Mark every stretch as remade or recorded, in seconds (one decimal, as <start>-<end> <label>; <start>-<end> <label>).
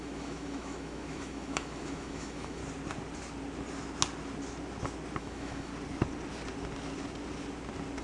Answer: 0.0-2.6 remade; 2.6-5.2 recorded; 5.2-5.7 remade; 5.7-8.0 recorded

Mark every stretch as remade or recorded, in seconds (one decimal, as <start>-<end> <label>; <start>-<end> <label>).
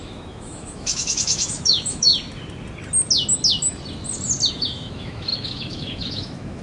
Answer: 0.0-2.1 remade; 2.1-4.5 recorded; 4.5-6.6 remade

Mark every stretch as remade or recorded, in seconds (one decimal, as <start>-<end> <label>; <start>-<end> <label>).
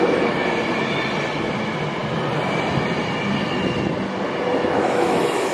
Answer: 0.0-4.5 recorded; 4.5-5.5 remade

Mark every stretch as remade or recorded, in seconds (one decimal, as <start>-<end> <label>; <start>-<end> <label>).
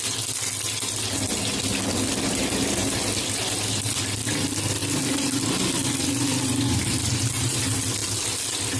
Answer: 0.0-8.8 recorded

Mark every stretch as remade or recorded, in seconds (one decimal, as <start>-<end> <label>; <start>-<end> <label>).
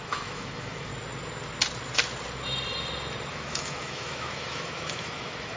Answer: 0.0-0.9 remade; 0.9-3.3 recorded; 3.3-5.6 remade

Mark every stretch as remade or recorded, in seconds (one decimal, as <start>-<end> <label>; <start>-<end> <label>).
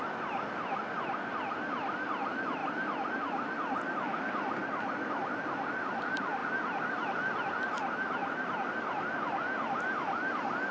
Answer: 0.0-4.6 recorded; 4.6-5.9 remade; 5.9-8.2 recorded; 8.2-9.0 remade; 9.0-10.7 recorded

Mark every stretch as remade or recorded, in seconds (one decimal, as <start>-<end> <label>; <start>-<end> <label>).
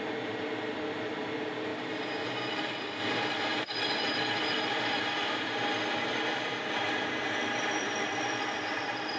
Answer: 0.0-1.7 remade; 1.7-2.5 recorded; 2.5-9.2 remade